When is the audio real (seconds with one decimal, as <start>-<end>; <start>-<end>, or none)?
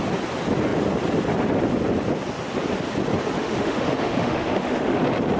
0.0-3.4; 5.0-5.4